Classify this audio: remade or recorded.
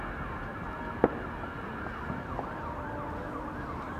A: recorded